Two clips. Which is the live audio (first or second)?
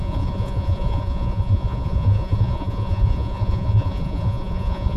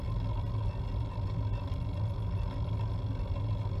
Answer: second